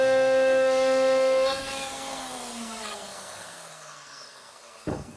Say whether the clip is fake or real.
fake